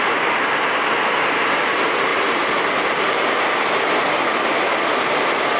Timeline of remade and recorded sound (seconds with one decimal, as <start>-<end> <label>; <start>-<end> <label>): 0.0-5.6 recorded